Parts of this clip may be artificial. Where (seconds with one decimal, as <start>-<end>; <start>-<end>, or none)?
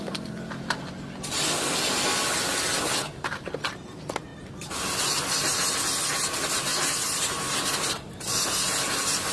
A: none